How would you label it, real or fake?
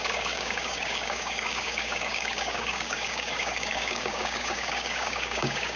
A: fake